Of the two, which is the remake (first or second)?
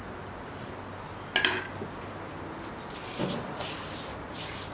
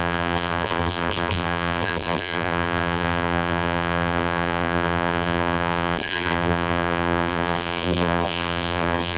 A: second